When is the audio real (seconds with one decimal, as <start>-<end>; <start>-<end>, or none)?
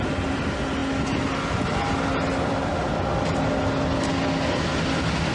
0.0-5.3